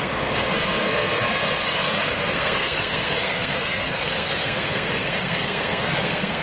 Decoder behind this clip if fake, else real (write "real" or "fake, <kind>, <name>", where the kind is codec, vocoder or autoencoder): fake, codec, SNAC